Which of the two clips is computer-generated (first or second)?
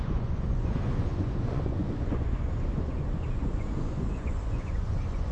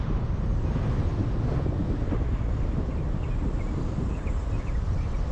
first